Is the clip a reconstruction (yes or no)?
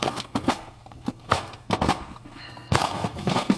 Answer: yes